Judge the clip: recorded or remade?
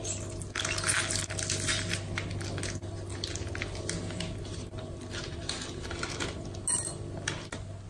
recorded